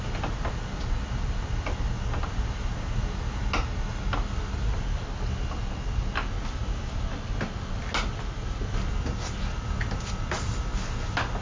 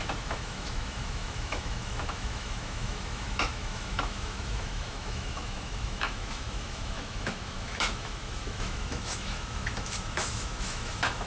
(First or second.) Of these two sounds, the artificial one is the second